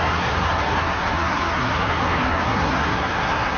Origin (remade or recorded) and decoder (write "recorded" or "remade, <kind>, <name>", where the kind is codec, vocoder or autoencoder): remade, codec, SNAC